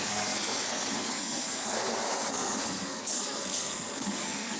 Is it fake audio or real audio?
fake